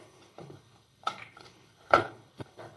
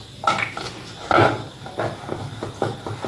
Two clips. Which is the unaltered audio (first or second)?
second